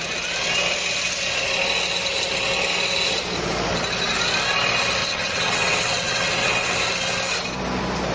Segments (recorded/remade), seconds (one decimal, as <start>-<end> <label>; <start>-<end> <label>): 0.0-5.0 recorded; 5.0-6.7 remade; 6.7-8.1 recorded

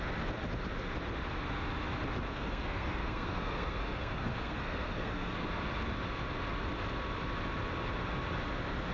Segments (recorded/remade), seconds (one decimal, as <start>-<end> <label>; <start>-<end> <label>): 0.0-2.3 recorded; 2.3-5.4 remade; 5.4-8.9 recorded

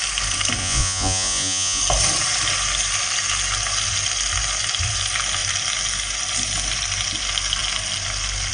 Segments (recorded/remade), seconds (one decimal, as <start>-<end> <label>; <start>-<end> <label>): 0.0-0.6 recorded; 0.6-1.8 remade; 1.8-8.5 recorded

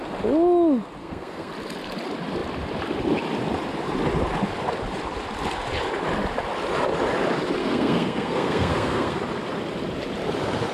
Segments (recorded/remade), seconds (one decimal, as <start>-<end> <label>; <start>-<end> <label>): 0.0-1.0 recorded; 1.0-1.5 remade; 1.5-7.6 recorded; 7.6-9.2 remade; 9.2-10.7 recorded